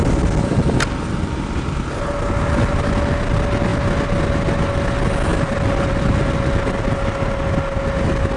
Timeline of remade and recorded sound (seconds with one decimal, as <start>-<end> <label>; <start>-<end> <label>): 0.0-5.3 recorded; 5.3-6.2 remade; 6.2-8.4 recorded